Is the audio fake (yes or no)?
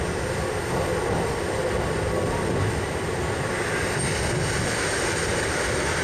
no